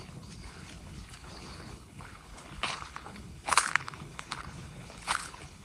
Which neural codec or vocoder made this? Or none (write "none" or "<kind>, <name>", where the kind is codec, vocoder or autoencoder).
codec, HILCodec